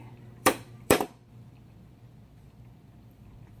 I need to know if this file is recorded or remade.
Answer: remade